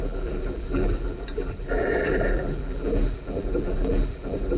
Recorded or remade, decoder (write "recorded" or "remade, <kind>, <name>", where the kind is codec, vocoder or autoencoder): remade, vocoder, BigVGAN v2